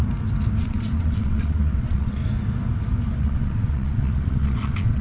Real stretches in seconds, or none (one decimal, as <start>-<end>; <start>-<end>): 0.0-0.6; 2.2-3.2